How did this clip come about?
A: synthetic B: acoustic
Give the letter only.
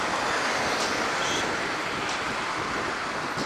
B